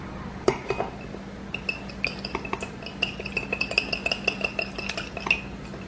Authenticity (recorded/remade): recorded